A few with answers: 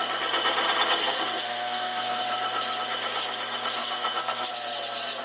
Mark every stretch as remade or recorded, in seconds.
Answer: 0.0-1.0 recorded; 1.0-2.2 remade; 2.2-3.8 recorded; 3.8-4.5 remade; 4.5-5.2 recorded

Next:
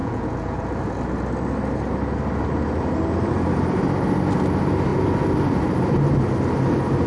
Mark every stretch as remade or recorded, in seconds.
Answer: 0.0-0.7 remade; 0.7-7.1 recorded

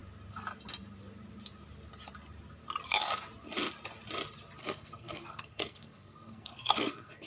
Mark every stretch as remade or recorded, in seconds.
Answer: 0.0-4.6 recorded; 4.6-7.3 remade

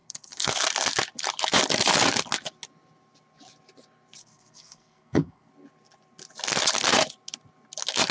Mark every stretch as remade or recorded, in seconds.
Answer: 0.0-0.6 remade; 0.6-4.2 recorded; 4.2-5.5 remade; 5.5-8.1 recorded

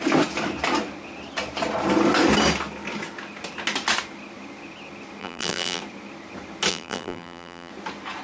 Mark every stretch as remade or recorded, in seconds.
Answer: 0.0-5.2 recorded; 5.2-5.8 remade; 5.8-6.7 recorded; 6.7-7.7 remade; 7.7-8.2 recorded